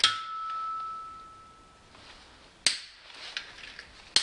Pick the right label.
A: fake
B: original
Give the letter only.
B